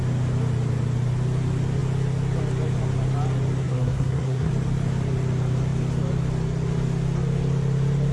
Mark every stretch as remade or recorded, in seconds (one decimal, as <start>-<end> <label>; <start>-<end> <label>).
0.0-3.6 recorded; 3.6-4.5 remade; 4.5-8.1 recorded